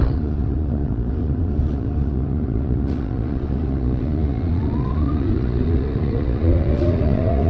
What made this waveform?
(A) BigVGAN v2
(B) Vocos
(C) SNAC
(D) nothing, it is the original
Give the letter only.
B